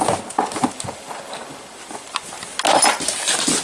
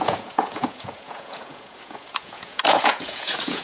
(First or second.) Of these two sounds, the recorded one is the first